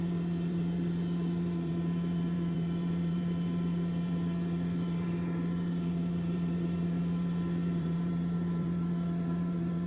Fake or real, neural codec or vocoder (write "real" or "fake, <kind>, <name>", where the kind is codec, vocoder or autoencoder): fake, vocoder, BigVGAN v2